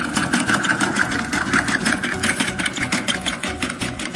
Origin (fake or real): fake